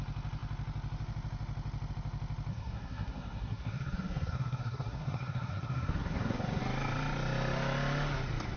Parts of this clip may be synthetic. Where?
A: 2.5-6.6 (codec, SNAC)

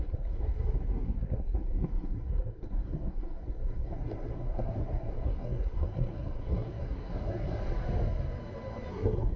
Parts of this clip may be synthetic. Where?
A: 0.0-7.6 (codec, SNAC); 8.9-9.4

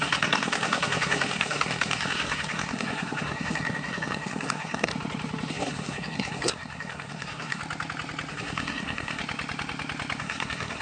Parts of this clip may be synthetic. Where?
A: 0.0-4.9 (codec, SNAC); 5.5-7.6; 8.3-9.2; 10.2-10.8

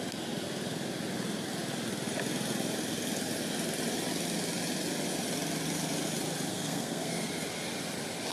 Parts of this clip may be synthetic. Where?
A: 6.5-7.3 (codec, SNAC)

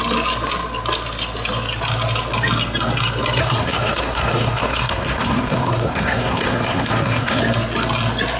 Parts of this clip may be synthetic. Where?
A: 3.4-7.4 (codec, SNAC)

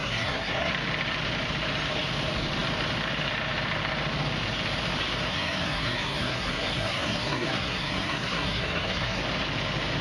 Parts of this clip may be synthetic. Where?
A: 0.0-0.7 (codec, SNAC); 5.3-9.2

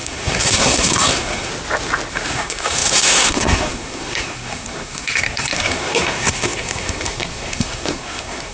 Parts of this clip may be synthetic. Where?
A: 0.0-1.5 (codec, SNAC); 2.1-8.5